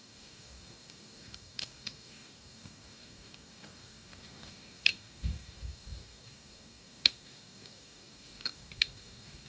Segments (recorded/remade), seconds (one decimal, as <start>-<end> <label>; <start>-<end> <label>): 0.0-9.5 remade